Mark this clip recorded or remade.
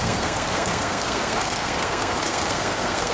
remade